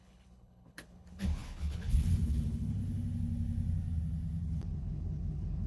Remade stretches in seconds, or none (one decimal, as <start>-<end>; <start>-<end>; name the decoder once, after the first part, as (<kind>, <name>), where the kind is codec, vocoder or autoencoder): 0.0-2.8 (codec, HILCodec); 4.4-5.7